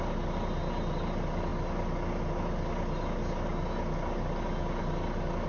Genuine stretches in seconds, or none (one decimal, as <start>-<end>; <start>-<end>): 0.0-5.5